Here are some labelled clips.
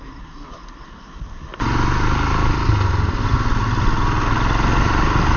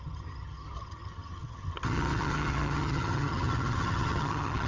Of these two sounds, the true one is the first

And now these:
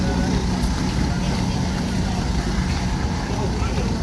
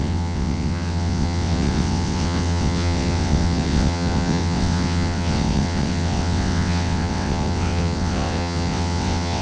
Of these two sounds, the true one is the first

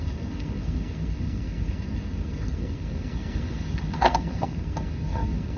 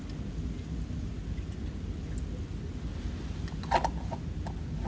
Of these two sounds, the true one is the second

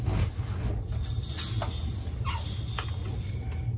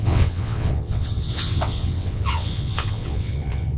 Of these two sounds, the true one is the first